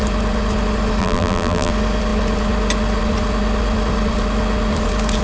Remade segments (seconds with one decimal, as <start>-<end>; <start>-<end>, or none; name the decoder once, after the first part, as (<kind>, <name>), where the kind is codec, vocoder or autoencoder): 1.0-1.7 (vocoder, BigVGAN v2)